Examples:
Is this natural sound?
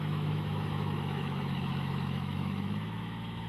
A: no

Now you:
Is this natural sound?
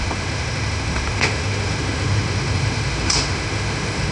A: no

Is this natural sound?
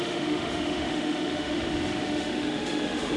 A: no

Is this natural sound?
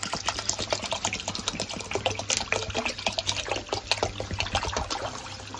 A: yes